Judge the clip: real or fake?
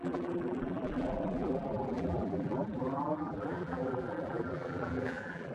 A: fake